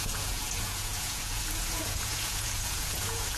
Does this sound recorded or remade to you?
remade